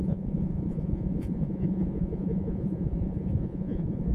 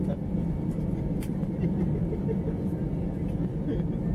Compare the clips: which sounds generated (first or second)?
first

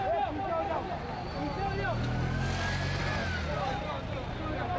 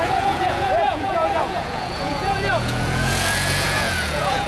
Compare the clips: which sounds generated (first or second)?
second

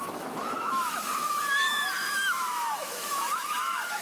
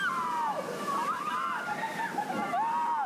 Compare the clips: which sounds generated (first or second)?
first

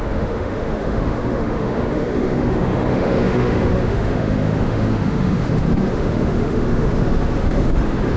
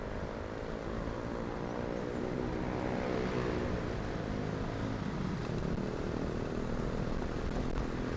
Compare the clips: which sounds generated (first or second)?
first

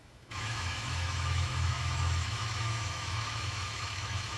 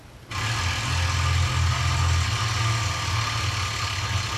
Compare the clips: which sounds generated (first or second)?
first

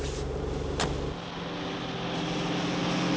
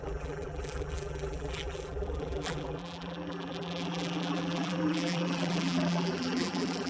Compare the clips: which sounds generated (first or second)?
second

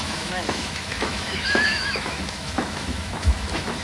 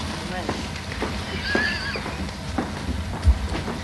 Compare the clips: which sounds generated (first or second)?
first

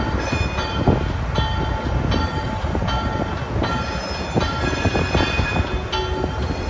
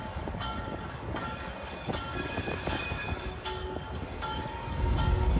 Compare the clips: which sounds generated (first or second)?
second